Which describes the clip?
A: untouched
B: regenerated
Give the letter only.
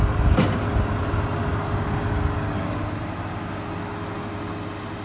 A